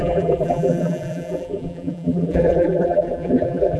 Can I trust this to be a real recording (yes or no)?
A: no